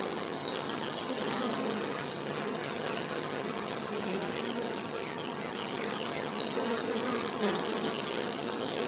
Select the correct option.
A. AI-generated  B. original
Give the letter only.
A